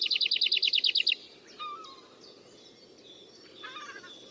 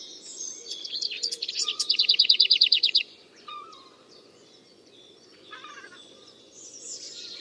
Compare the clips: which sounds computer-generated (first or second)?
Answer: second